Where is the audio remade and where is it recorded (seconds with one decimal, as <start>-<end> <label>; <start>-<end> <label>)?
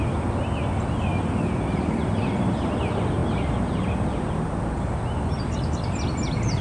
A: 0.0-6.6 recorded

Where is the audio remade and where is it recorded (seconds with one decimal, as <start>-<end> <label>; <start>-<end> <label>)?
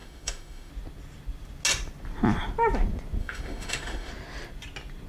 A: 0.0-0.7 remade; 0.7-3.2 recorded; 3.2-4.1 remade; 4.1-5.1 recorded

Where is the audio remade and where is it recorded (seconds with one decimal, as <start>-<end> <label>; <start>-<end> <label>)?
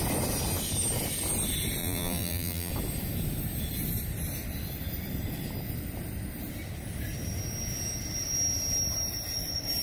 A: 0.0-1.8 recorded; 1.8-2.7 remade; 2.7-9.8 recorded